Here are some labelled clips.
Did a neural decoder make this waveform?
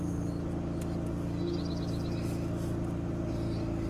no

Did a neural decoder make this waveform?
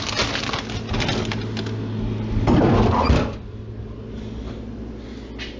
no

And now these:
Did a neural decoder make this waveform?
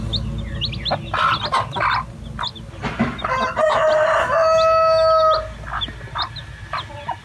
no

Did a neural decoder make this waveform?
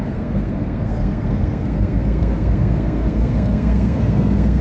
yes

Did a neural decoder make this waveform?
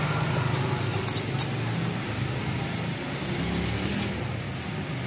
no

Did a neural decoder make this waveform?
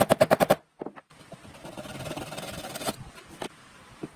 no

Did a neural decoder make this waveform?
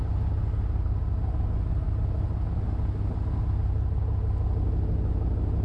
no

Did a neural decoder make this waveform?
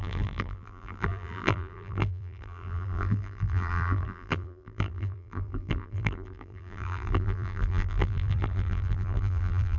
yes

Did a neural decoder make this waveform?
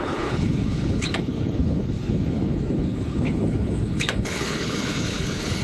yes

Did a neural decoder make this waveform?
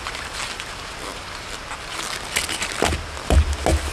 no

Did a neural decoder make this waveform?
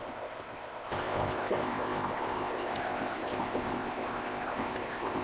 yes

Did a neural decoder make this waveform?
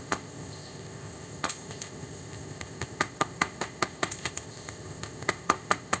yes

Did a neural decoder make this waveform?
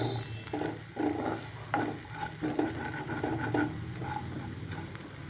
no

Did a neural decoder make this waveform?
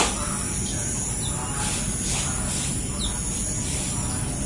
no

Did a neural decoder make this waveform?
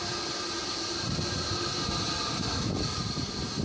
no